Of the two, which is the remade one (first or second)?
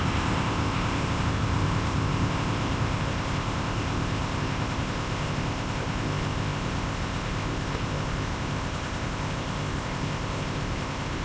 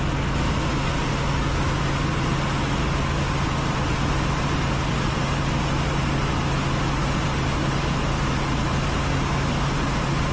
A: first